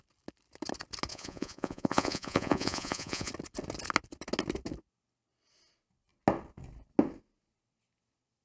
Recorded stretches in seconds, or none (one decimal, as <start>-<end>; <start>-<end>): 0.0-1.1; 3.3-8.4